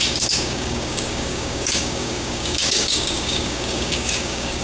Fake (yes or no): yes